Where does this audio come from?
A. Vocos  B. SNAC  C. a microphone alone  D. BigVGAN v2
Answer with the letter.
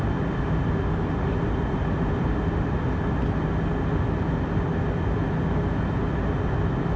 C